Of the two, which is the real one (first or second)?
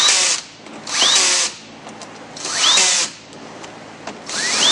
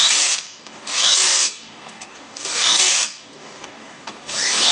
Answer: first